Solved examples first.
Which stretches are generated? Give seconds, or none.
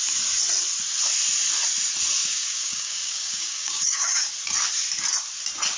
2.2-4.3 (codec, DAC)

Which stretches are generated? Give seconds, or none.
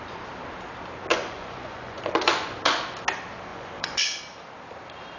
1.1-2.8 (vocoder, Vocos); 3.5-4.2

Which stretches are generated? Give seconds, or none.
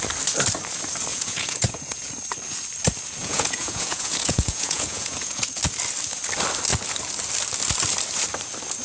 1.1-2.1 (vocoder, Vocos); 3.2-5.6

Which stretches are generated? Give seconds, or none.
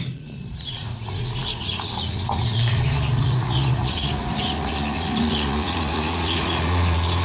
0.0-7.2 (vocoder, Vocos)